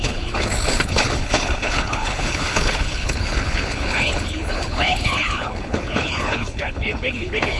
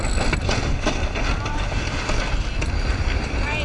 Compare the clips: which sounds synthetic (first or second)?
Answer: first